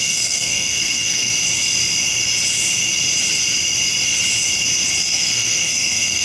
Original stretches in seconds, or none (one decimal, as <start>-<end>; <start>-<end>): 1.3-5.0